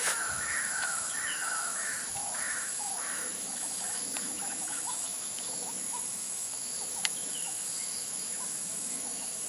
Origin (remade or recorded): remade